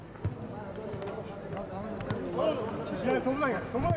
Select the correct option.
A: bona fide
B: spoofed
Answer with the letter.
A